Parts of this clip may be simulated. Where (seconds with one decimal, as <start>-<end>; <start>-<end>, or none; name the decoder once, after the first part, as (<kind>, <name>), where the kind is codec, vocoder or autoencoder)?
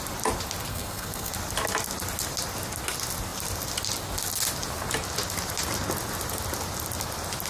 0.7-1.3 (codec, SNAC)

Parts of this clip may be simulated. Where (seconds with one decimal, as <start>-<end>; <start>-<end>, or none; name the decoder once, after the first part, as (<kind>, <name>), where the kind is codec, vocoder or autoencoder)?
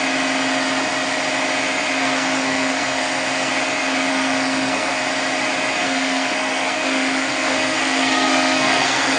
2.0-3.5 (codec, SNAC); 4.1-5.0; 5.8-9.2